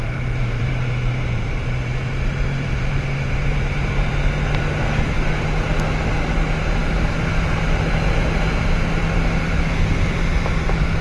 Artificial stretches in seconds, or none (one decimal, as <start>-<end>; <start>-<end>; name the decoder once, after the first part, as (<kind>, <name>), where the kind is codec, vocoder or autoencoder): 0.0-4.1 (vocoder, BigVGAN v2)